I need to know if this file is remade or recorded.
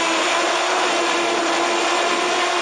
recorded